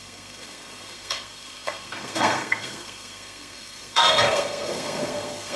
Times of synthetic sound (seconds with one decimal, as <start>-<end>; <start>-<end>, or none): 0.0-5.6